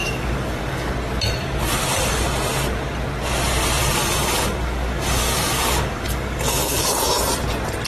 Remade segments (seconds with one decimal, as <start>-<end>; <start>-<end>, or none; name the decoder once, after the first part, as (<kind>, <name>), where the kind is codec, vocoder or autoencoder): 0.0-0.9 (codec, DAC); 3.8-6.9